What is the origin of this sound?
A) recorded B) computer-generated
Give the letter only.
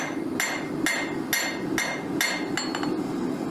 A